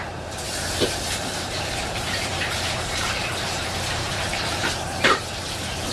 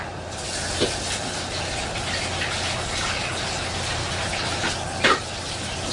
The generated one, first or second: first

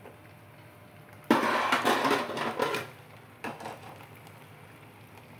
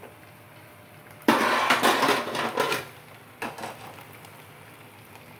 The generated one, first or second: first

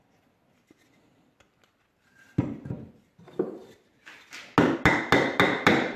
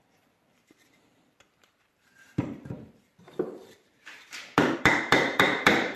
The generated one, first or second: second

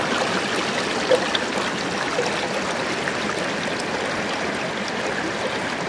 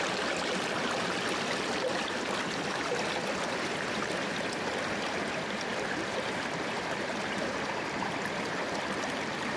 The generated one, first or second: second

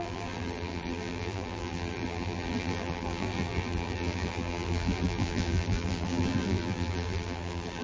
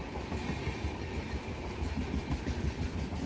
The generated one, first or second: first